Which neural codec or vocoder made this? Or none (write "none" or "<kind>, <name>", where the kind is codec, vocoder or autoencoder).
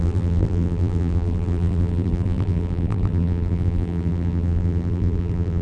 vocoder, BigVGAN v2